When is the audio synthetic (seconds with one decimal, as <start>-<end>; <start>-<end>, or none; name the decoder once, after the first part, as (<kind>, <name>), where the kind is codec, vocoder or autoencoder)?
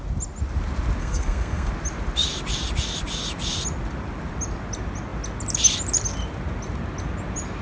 1.0-1.7 (codec, SNAC)